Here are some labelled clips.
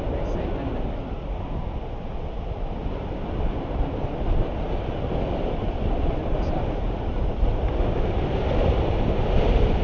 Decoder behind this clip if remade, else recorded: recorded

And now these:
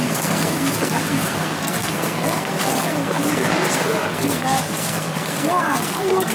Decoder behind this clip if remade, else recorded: remade, codec, SNAC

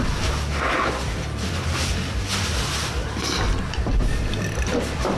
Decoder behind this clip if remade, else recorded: recorded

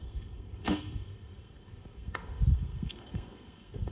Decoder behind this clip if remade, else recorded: remade, codec, SNAC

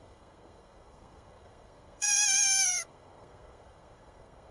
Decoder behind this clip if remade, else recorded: remade, codec, SNAC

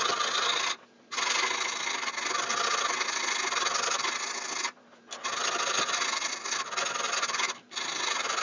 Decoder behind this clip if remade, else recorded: recorded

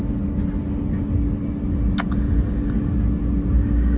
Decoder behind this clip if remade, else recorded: recorded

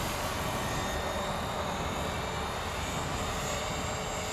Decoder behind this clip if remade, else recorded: recorded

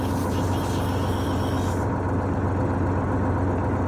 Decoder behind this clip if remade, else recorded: recorded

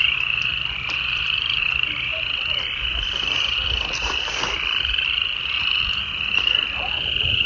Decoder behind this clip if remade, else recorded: recorded